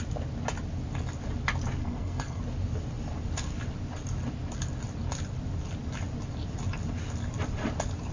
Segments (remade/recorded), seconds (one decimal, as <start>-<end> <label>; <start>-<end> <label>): 0.0-1.8 recorded; 1.8-2.4 remade; 2.4-8.1 recorded